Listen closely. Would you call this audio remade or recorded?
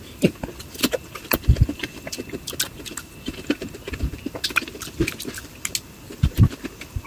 recorded